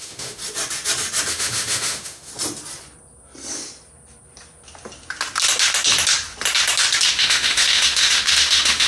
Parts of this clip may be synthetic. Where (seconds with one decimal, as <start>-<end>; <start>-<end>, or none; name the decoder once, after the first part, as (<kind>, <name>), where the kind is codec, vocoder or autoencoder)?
0.0-0.4 (autoencoder, DAC-VAE); 1.3-2.3; 7.1-8.9